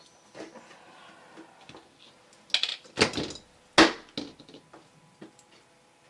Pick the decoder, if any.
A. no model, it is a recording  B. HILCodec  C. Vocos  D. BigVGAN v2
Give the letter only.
A